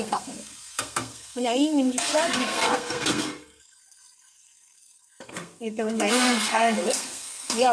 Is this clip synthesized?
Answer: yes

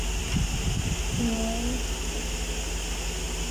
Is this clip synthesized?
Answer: no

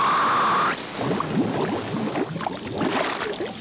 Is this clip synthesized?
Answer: no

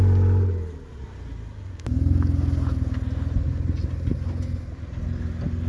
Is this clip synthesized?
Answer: no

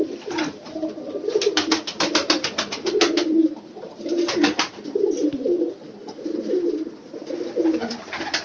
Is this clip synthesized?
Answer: yes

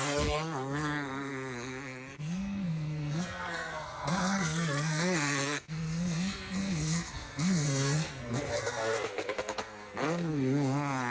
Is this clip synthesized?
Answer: yes